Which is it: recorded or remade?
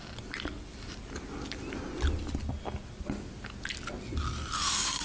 recorded